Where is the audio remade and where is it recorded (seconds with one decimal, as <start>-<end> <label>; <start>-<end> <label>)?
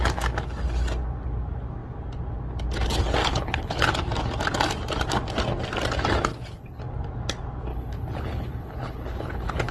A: 0.0-3.2 recorded; 3.2-3.9 remade; 3.9-6.3 recorded; 6.3-6.8 remade; 6.8-7.7 recorded; 7.7-9.7 remade